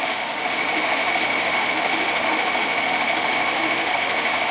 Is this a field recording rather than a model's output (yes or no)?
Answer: no